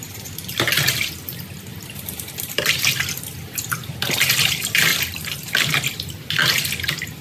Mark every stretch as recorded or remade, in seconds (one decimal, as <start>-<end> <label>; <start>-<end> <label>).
0.0-1.7 recorded; 1.7-2.9 remade; 2.9-4.9 recorded; 4.9-5.5 remade; 5.5-7.2 recorded

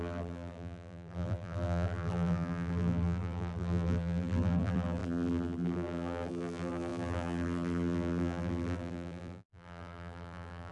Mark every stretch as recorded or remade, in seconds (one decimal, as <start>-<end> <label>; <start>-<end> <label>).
0.0-10.7 remade

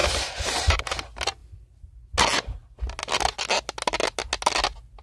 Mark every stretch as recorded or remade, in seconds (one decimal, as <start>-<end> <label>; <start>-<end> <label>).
0.0-0.8 remade; 0.8-5.0 recorded

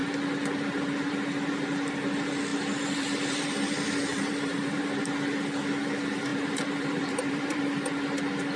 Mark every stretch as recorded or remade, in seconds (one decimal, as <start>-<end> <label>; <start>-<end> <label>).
0.0-2.5 recorded; 2.5-5.0 remade; 5.0-6.3 recorded; 6.3-7.6 remade; 7.6-8.6 recorded

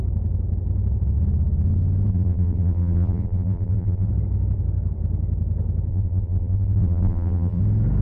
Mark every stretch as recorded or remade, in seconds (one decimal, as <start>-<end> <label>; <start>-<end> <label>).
0.0-2.1 recorded; 2.1-4.1 remade; 4.1-5.9 recorded; 5.9-7.6 remade; 7.6-8.0 recorded

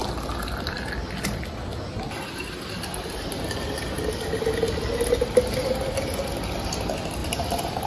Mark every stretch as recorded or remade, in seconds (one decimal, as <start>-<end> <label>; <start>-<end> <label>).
0.0-7.2 recorded; 7.2-7.9 remade

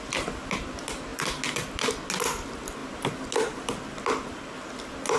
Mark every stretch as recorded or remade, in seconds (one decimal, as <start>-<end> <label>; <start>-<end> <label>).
0.0-5.2 recorded

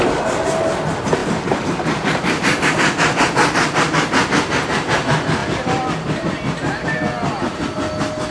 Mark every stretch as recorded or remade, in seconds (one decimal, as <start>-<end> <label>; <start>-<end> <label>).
0.0-1.2 recorded; 1.2-2.7 remade; 2.7-5.4 recorded; 5.4-7.6 remade; 7.6-8.3 recorded